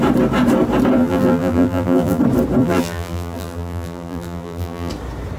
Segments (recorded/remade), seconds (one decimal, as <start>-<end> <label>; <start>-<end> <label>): 0.0-1.0 recorded; 1.0-2.2 remade; 2.2-2.6 recorded; 2.6-4.9 remade; 4.9-5.4 recorded